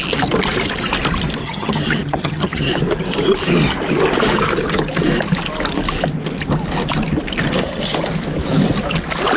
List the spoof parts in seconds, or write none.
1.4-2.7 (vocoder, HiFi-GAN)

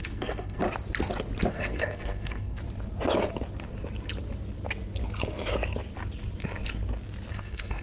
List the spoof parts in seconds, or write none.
0.0-0.6 (codec, SNAC); 1.5-2.6; 7.3-7.8

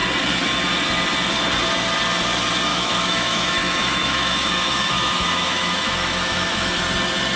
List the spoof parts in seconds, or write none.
2.7-6.8 (autoencoder, DAC-VAE)

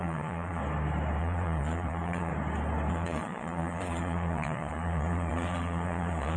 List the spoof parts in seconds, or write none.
0.0-0.6 (vocoder, Vocos); 1.2-2.3; 2.9-6.4

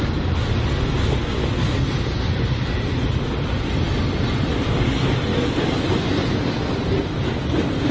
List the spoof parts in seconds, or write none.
none

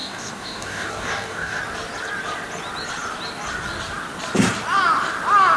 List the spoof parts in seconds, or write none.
0.0-1.6 (codec, DAC)

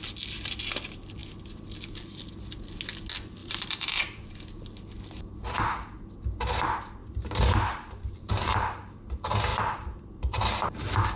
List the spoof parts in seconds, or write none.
3.4-4.5 (vocoder, BigVGAN v2); 7.0-8.3; 9.5-10.4